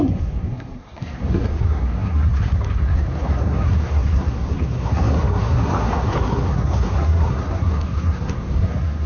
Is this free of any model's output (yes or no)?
no